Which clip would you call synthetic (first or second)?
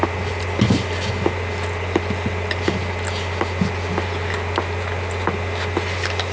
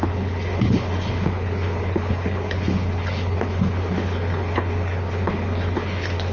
second